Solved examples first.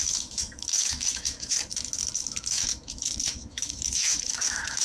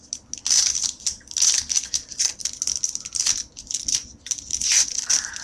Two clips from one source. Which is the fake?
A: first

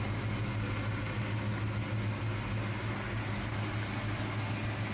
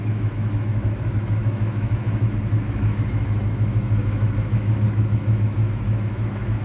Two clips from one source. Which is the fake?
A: second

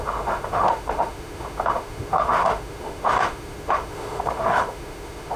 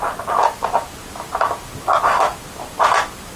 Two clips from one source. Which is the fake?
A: first